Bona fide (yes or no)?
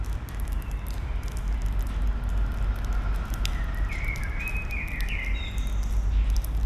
yes